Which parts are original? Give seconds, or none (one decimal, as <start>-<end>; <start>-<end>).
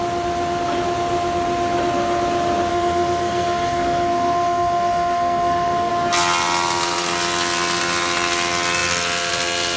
0.0-2.7; 5.9-9.8